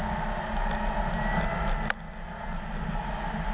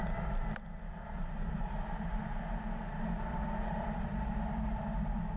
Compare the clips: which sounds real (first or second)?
first